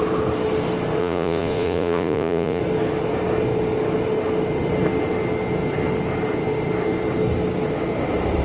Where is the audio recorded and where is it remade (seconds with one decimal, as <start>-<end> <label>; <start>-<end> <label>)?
0.0-1.0 recorded; 1.0-2.6 remade; 2.6-8.4 recorded